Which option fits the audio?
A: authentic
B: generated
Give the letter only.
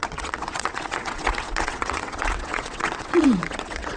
B